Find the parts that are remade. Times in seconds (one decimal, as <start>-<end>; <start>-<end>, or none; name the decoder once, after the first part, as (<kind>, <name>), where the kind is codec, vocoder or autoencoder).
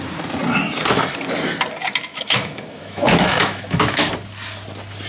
2.1-4.1 (autoencoder, DAC-VAE)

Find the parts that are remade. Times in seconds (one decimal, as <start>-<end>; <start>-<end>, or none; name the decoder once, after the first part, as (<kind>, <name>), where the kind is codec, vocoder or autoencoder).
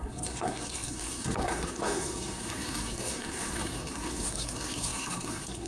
0.0-5.7 (codec, SNAC)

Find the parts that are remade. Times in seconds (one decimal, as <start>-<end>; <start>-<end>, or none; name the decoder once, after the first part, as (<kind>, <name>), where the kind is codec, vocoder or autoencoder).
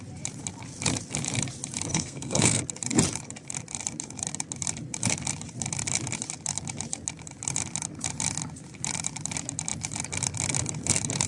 1.9-2.6 (codec, SNAC)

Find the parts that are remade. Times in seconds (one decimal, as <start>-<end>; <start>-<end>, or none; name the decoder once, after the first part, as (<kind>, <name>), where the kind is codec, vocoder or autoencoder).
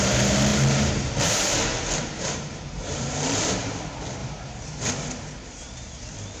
1.7-3.7 (vocoder, BigVGAN v2); 4.2-4.9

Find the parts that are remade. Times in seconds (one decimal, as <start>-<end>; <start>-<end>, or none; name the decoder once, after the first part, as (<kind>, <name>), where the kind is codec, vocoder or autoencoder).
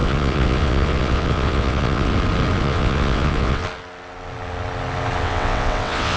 0.0-2.1 (vocoder, WaveNeXt); 2.6-3.6; 5.2-6.2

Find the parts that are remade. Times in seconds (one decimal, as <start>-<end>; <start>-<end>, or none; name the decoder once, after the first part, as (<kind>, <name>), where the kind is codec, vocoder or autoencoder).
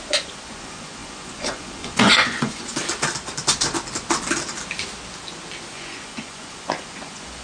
0.0-2.8 (vocoder, Vocos); 5.7-7.4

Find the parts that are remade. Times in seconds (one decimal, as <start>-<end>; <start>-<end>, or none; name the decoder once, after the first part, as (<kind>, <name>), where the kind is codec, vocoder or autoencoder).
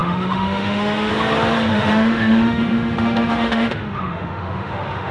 0.0-1.1 (autoencoder, DAC-VAE); 1.7-5.1